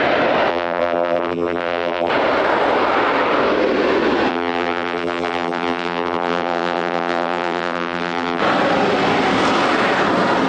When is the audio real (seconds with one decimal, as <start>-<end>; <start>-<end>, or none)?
0.0-0.5; 2.1-4.3; 8.4-10.5